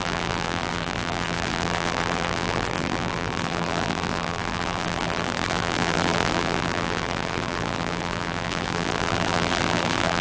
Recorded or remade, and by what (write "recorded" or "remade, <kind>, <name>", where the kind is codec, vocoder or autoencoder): remade, vocoder, BigVGAN v2